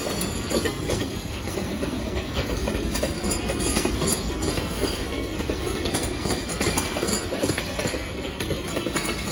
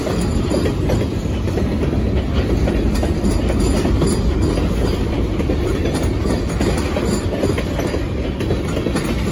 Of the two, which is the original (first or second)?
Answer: second